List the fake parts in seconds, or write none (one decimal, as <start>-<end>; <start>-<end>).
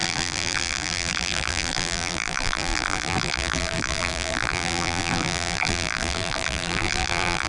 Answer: 0.0-7.5